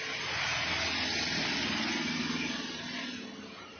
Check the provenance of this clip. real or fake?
real